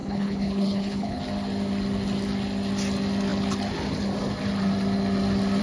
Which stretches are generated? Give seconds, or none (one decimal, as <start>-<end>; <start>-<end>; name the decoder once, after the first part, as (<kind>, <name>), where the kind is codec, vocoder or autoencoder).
0.0-1.2 (codec, HILCodec)